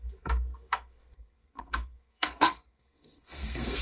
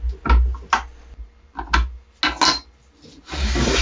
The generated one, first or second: first